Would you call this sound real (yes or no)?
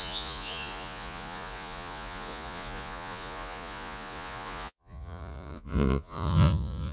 no